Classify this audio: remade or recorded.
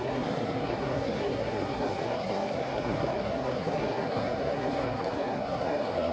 remade